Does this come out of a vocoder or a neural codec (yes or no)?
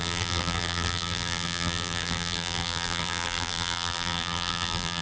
yes